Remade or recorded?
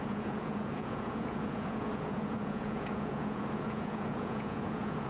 remade